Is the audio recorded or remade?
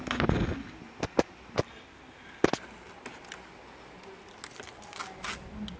recorded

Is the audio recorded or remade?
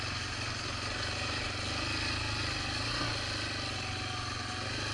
recorded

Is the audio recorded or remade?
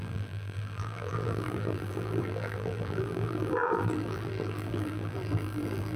remade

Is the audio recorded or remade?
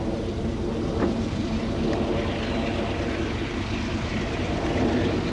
recorded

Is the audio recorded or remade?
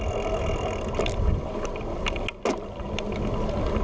recorded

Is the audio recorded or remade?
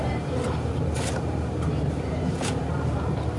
remade